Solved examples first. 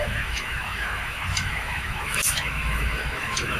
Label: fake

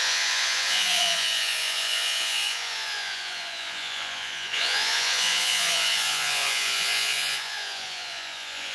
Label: fake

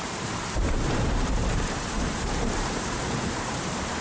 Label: fake